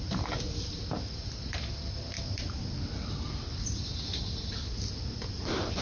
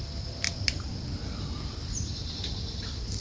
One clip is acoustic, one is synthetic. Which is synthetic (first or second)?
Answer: second